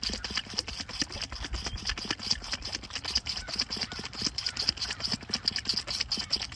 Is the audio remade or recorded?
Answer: recorded